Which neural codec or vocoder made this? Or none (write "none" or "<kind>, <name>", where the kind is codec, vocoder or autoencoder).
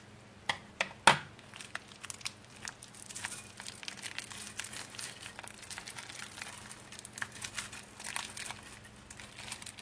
none